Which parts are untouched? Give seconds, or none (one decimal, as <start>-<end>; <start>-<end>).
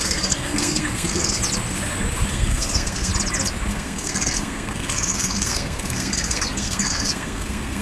1.4-2.3; 3.1-3.7